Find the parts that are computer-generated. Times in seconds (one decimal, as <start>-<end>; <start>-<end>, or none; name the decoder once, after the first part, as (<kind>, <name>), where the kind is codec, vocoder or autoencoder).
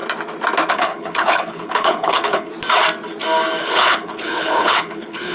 0.7-2.5 (codec, HILCodec); 3.6-5.3